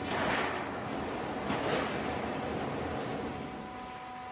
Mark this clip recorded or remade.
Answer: recorded